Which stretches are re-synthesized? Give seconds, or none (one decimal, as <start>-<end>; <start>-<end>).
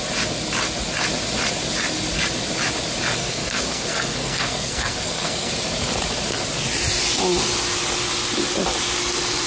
3.2-5.5